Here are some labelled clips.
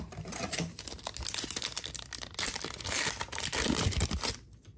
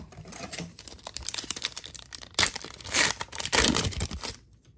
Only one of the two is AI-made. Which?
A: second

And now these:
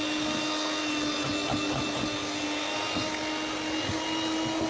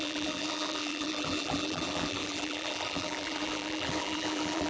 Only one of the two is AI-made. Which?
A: second